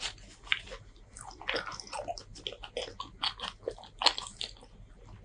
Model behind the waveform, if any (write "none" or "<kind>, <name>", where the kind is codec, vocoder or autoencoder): none